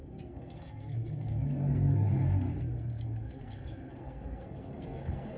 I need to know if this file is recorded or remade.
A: remade